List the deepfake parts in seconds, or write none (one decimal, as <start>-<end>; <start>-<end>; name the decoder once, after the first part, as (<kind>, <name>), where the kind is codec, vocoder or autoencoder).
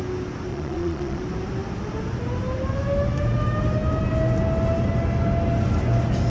0.5-1.2 (vocoder, Vocos)